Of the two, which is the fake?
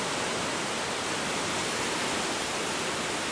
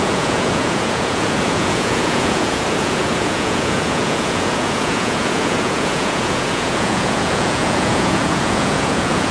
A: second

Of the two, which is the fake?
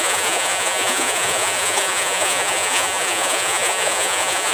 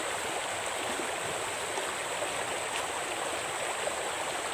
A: first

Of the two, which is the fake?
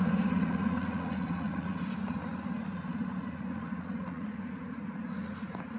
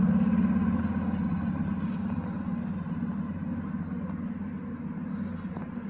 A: first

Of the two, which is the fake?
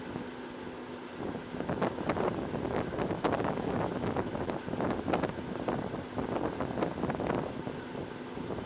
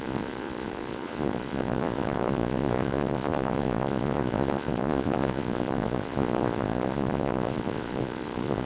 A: second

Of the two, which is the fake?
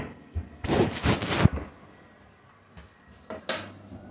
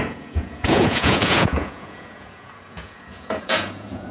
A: second